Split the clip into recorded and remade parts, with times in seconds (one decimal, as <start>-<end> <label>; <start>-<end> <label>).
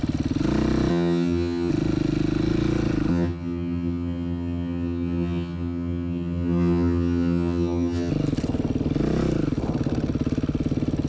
0.0-0.9 recorded; 0.9-1.7 remade; 1.7-3.1 recorded; 3.1-8.1 remade; 8.1-11.1 recorded